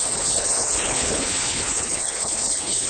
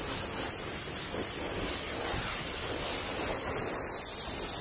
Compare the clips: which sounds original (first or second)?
second